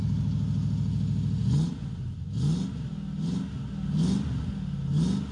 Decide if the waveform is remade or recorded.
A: recorded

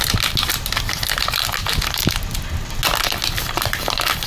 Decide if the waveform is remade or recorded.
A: recorded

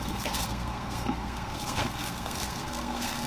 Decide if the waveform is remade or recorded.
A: remade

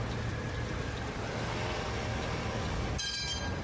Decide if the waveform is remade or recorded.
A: recorded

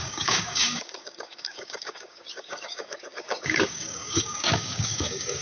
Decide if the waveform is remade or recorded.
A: remade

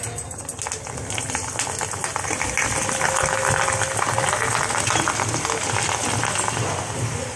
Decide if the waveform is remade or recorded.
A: recorded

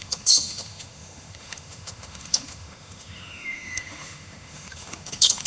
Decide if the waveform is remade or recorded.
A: remade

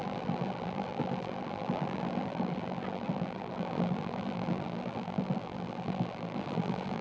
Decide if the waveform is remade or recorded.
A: remade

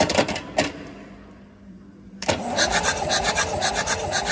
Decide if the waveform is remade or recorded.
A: recorded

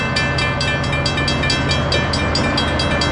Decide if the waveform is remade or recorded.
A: recorded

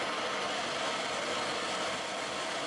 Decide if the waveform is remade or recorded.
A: recorded